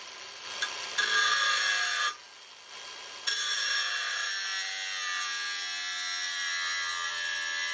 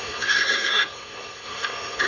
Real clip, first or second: first